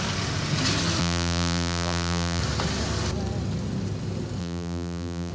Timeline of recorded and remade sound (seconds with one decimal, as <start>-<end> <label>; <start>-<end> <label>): 0.0-1.0 recorded; 1.0-2.4 remade; 2.4-4.4 recorded; 4.4-5.3 remade